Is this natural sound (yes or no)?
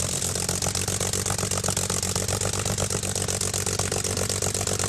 yes